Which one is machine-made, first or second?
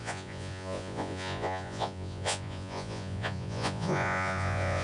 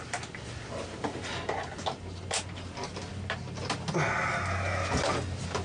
first